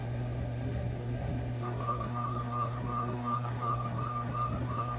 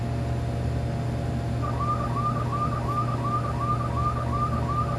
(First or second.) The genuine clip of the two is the second